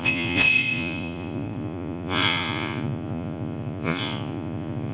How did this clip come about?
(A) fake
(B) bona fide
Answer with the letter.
A